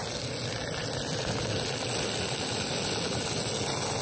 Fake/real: real